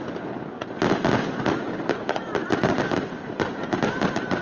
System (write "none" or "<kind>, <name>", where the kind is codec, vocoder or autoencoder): none